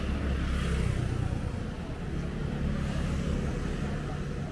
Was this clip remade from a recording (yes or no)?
no